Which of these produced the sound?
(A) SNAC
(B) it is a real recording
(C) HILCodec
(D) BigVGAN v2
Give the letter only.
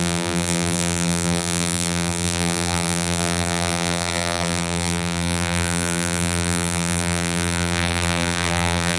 D